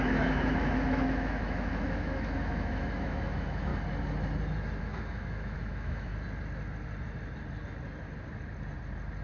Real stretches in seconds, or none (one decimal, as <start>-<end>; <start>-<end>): 3.7-4.8; 6.1-9.2